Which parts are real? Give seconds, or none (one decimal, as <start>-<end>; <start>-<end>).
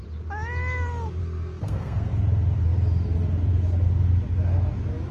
0.0-1.2; 2.1-5.1